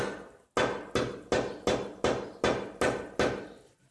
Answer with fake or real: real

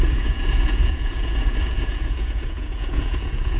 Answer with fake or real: fake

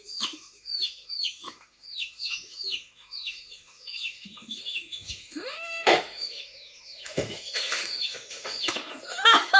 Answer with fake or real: fake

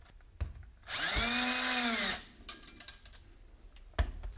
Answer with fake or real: real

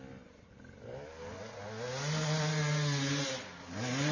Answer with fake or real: real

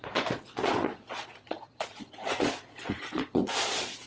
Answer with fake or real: fake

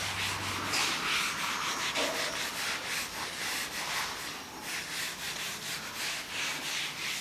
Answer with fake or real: real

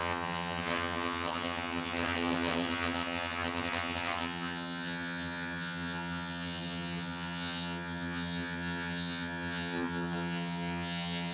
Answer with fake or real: fake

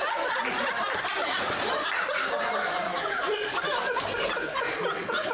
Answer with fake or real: real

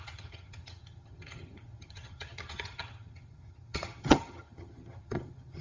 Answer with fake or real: fake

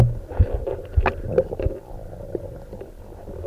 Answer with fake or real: real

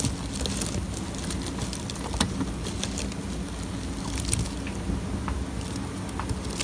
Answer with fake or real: real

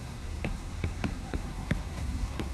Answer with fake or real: fake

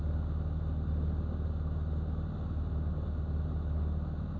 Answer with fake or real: real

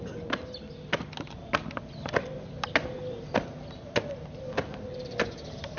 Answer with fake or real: real